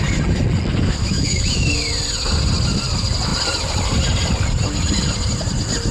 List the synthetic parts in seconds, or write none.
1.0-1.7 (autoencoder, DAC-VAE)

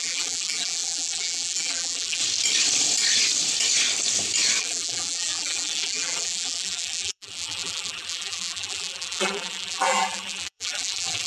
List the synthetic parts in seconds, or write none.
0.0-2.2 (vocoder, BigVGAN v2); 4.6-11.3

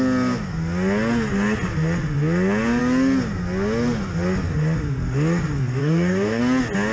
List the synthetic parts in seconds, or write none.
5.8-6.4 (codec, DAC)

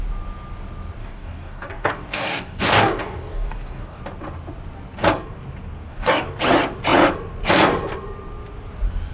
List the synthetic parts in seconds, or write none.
1.0-4.0 (codec, DAC); 5.9-6.4

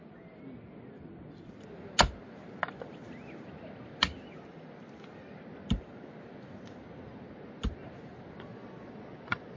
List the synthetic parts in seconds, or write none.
8.5-9.6 (vocoder, Vocos)

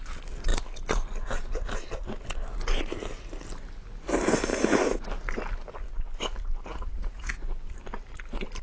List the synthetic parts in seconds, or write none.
4.5-5.1 (vocoder, Vocos); 6.7-7.3